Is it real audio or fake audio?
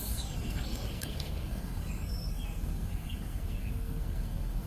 fake